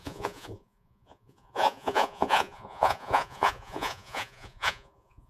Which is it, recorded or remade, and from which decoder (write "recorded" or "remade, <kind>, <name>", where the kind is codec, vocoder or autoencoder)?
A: remade, vocoder, Vocos